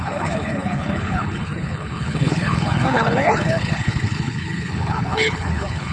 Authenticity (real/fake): fake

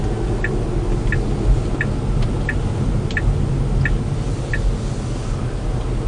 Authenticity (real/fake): real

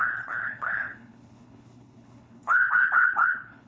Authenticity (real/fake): fake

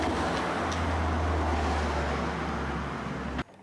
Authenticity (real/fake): real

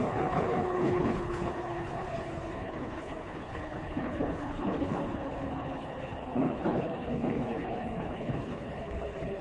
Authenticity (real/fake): fake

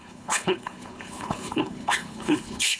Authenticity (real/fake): fake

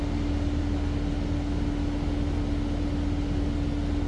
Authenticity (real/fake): real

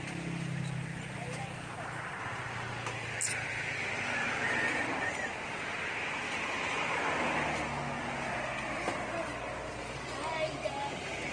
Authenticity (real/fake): real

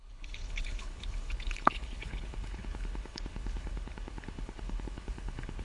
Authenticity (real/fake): fake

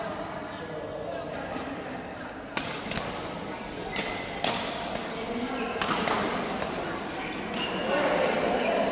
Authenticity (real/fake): real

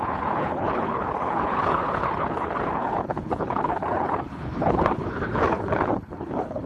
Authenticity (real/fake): fake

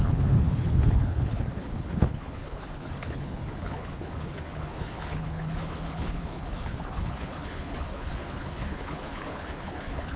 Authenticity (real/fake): fake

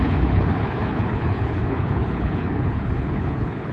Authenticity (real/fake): fake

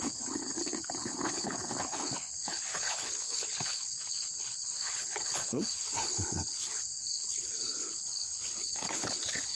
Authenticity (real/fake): fake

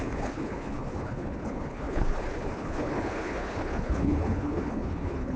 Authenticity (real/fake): fake